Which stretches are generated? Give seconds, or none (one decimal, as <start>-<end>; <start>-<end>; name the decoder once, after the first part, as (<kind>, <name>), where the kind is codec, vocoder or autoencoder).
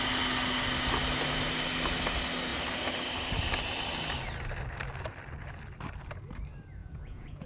6.8-7.5 (vocoder, Vocos)